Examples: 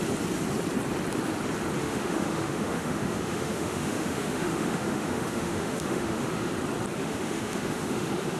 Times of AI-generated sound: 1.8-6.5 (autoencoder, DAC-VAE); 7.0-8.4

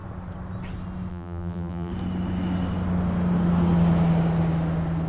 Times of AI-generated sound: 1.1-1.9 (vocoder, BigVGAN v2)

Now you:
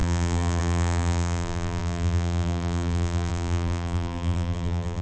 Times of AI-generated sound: 0.0-5.0 (vocoder, BigVGAN v2)